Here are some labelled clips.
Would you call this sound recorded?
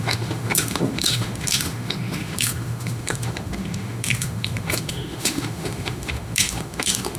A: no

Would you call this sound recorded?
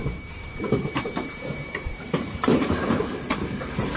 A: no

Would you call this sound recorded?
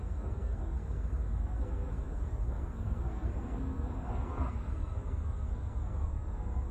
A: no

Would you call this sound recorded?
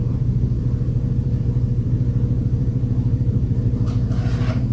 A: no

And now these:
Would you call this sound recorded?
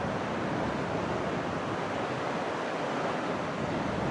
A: yes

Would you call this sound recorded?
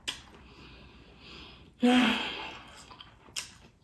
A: yes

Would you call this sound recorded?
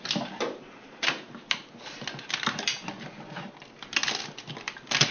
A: yes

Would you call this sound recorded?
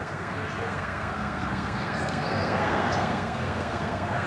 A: no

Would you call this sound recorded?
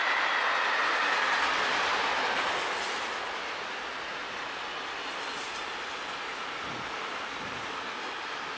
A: yes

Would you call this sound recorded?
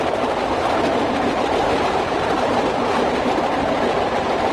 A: yes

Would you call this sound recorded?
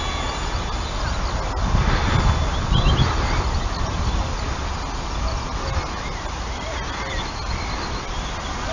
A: yes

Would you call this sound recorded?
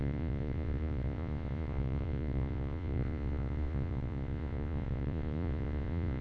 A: no